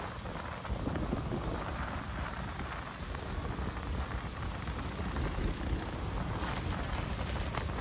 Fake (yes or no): no